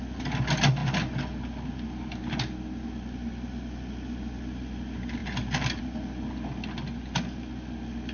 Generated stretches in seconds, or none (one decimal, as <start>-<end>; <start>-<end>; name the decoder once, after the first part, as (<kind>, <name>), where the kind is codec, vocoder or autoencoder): none